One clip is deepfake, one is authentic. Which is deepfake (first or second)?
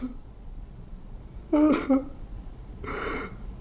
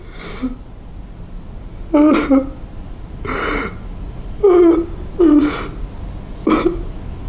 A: first